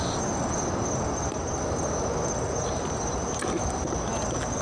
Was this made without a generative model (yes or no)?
yes